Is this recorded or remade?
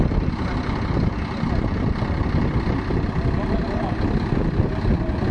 recorded